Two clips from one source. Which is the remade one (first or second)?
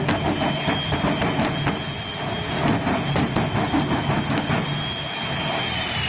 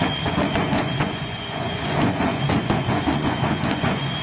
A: second